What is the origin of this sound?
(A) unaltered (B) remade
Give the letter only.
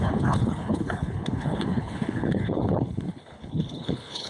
B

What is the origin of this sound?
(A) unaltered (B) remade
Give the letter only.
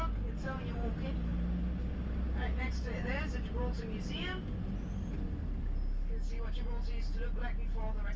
A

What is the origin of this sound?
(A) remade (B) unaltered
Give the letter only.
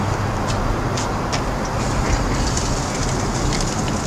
B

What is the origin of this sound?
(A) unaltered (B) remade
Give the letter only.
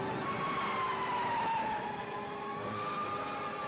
A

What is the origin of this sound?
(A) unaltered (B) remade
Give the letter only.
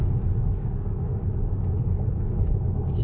A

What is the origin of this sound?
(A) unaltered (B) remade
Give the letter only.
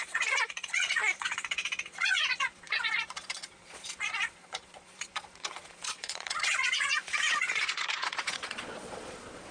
B